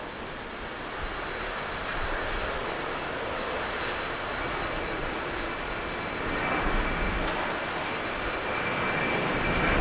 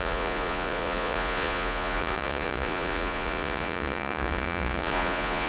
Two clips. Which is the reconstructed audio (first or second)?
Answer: second